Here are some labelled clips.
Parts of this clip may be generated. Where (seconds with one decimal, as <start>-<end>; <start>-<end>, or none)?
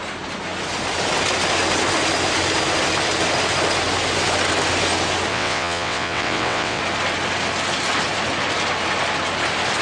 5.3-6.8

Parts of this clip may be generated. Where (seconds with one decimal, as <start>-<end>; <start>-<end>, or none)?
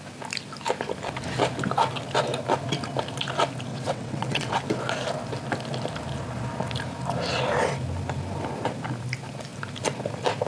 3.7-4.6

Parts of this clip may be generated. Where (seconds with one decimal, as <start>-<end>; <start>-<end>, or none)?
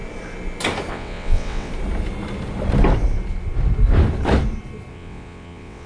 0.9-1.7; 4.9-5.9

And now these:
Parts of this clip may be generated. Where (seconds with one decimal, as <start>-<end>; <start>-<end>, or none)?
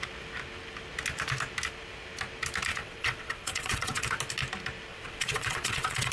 2.7-4.0; 4.9-6.1